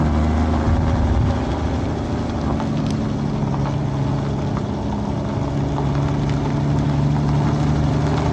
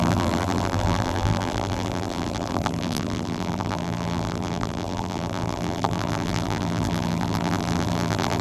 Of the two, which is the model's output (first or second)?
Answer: second